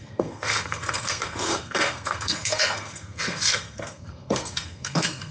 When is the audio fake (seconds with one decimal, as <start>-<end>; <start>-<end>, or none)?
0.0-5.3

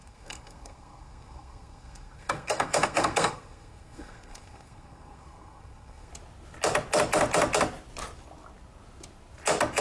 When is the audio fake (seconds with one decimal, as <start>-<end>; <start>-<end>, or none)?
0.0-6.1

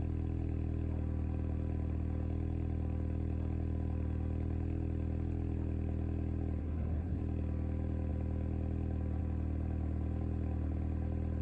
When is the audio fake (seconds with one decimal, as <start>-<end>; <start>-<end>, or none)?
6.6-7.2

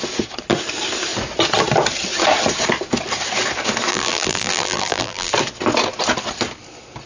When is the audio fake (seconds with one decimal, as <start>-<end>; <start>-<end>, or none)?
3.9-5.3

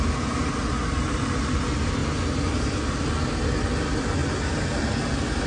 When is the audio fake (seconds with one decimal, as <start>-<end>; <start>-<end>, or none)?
none

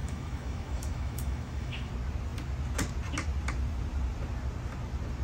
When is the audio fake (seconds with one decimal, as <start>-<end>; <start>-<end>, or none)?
0.0-1.9

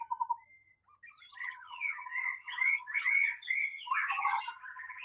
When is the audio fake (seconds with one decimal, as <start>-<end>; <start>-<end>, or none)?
1.4-4.4

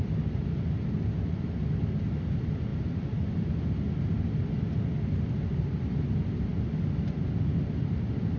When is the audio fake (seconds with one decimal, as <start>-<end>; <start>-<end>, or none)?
none